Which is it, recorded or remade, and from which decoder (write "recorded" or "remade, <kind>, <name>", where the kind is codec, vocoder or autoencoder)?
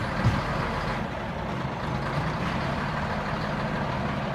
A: recorded